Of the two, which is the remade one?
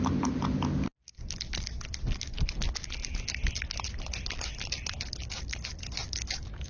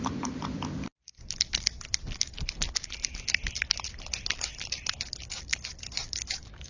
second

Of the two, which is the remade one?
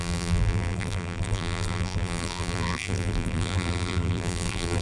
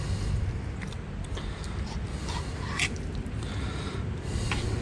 first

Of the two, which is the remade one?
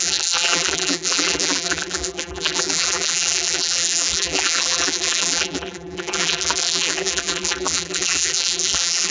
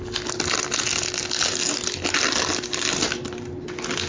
first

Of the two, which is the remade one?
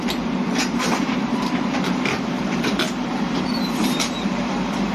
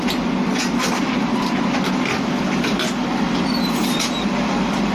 first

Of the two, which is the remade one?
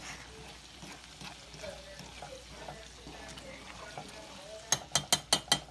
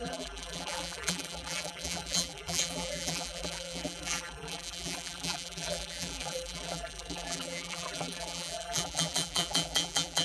second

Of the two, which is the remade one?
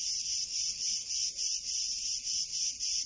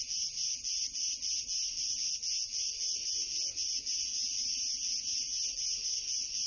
first